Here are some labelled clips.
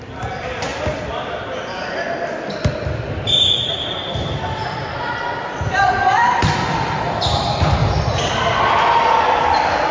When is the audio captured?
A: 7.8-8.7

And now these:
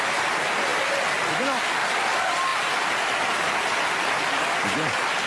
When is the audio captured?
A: 0.0-5.3

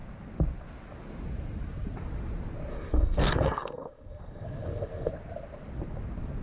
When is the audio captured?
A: 0.0-2.7; 5.1-6.4

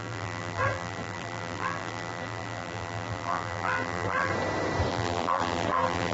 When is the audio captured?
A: 4.3-4.9

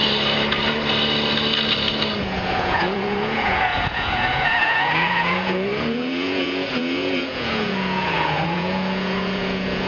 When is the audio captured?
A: 0.0-2.2

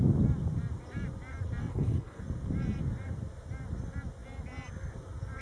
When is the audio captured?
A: 0.0-1.7; 2.2-5.4

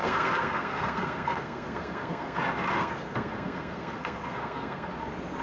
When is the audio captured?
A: 2.4-2.8; 4.9-5.4

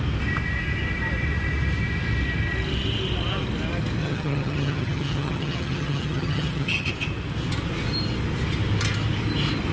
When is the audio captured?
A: 0.0-4.0; 6.9-9.7